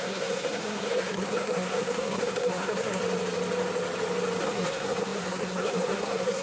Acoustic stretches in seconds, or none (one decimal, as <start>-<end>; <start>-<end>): 3.0-4.4